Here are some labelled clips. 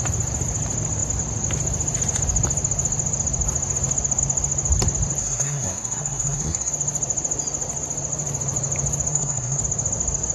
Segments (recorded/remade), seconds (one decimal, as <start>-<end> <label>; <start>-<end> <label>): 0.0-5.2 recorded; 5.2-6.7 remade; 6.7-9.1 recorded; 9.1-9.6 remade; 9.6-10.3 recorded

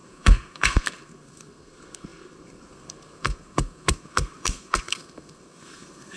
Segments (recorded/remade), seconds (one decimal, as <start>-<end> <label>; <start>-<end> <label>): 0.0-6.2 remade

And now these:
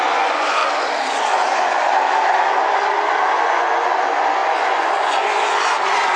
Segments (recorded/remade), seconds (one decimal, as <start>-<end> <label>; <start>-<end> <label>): 0.0-0.6 remade; 0.6-1.1 recorded; 1.1-6.2 remade

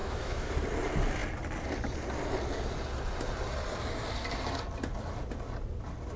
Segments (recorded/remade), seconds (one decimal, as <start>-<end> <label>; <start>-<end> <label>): 0.0-0.5 remade; 0.5-6.2 recorded

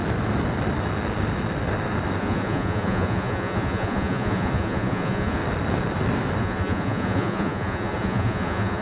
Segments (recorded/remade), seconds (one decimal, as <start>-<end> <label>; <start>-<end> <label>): 0.0-2.2 recorded; 2.2-5.4 remade; 5.4-6.4 recorded; 6.4-8.8 remade

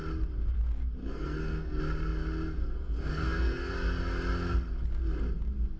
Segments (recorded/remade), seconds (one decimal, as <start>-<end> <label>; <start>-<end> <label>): 0.0-1.0 recorded; 1.0-1.8 remade; 1.8-2.6 recorded; 2.6-3.7 remade; 3.7-5.8 recorded

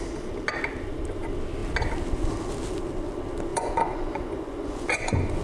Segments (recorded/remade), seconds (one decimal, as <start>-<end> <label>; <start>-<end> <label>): 0.0-3.5 recorded; 3.5-5.4 remade

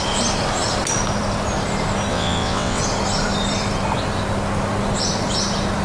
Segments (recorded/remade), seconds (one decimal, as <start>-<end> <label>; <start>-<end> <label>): 0.0-2.1 recorded; 2.1-2.8 remade; 2.8-5.8 recorded